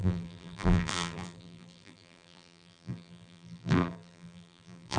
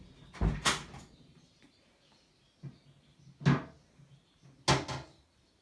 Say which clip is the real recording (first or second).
second